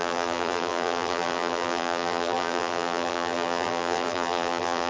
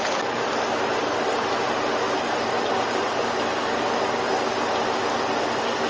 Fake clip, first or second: first